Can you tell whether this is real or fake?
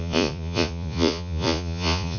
fake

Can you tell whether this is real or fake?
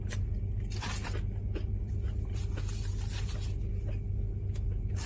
real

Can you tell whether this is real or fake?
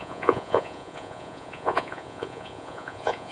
fake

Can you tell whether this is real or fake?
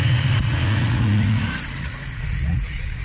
fake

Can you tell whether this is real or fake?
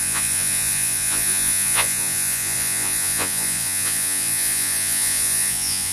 fake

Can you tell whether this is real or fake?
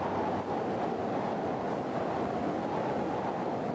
real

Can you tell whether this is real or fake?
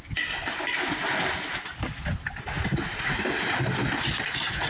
real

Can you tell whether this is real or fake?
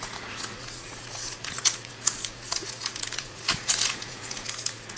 fake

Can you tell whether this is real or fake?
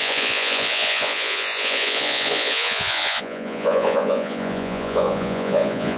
fake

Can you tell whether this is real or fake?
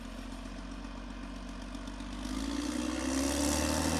real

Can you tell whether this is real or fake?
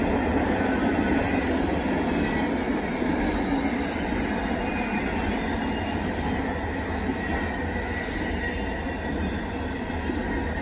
real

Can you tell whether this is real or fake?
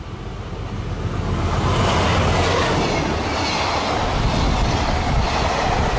real